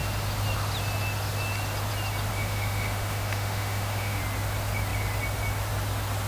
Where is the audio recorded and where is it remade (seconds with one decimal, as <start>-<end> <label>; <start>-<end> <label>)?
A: 0.0-2.3 recorded; 2.3-4.2 remade; 4.2-6.3 recorded